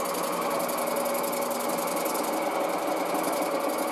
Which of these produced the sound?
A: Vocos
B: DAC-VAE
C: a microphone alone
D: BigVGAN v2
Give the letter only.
C